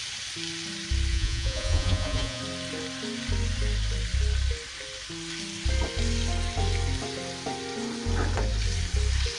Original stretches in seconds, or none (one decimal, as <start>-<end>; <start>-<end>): 0.0-1.1; 2.4-9.4